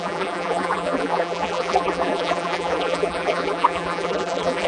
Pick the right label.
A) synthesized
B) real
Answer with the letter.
A